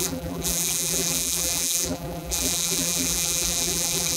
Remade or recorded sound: remade